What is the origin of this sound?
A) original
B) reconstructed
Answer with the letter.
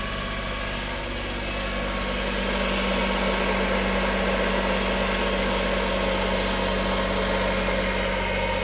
A